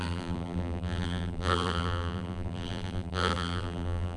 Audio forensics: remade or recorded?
remade